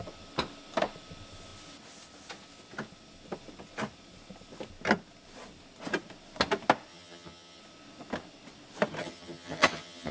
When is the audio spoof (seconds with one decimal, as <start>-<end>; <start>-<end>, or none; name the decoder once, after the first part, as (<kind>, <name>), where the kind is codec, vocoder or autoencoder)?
6.9-7.6 (vocoder, HiFi-GAN); 9.0-10.1